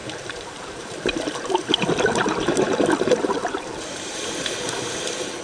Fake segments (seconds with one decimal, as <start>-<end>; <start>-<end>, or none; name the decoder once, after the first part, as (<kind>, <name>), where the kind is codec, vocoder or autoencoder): 0.0-1.5 (vocoder, BigVGAN v2); 3.3-4.2